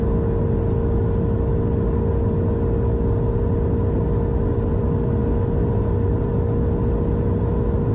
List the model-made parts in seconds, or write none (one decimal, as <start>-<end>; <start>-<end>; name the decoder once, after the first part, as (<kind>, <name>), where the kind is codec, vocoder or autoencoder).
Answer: none